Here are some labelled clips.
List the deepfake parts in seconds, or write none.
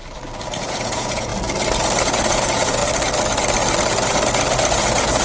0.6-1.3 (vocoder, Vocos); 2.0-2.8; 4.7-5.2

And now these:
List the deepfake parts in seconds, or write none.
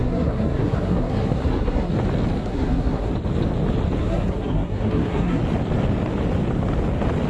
0.0-1.9 (codec, SNAC); 2.4-3.1; 4.0-5.4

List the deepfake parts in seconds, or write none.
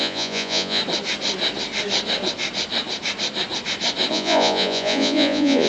0.0-0.8 (vocoder, Vocos); 4.1-5.7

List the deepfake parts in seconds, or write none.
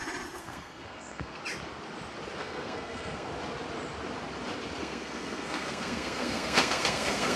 0.4-1.4 (codec, SNAC); 2.4-3.3; 4.8-7.4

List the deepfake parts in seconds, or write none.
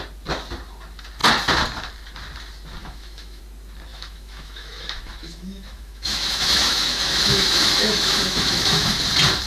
2.8-3.4 (autoencoder, DAC-VAE); 3.9-9.0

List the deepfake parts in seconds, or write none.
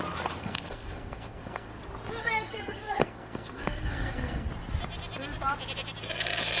0.4-1.8 (codec, SNAC); 2.2-4.5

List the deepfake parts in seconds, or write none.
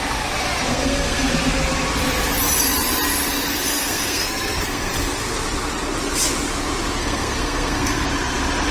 0.7-1.3 (codec, SNAC); 3.7-4.9; 7.0-8.1